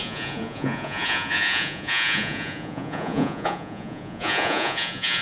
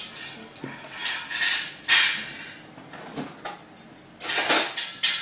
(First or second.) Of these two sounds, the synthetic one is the first